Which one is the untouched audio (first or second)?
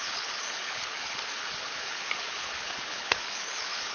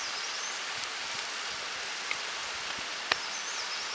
second